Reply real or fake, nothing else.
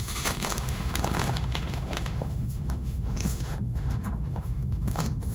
fake